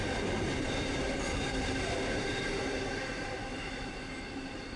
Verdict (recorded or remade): remade